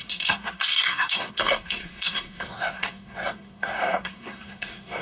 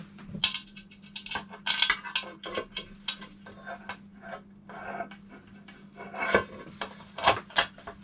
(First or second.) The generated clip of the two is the first